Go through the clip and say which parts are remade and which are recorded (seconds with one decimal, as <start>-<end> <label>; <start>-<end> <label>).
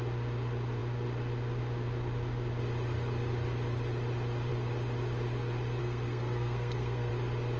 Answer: 0.0-5.8 recorded; 5.8-7.1 remade; 7.1-7.6 recorded